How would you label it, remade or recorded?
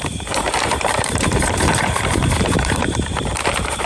remade